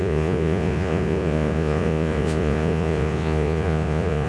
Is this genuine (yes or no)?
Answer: no